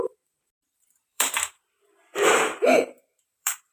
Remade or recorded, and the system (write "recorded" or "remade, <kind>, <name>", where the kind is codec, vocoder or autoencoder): remade, vocoder, BigVGAN v2